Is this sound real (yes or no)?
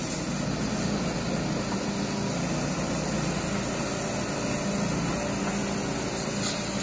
yes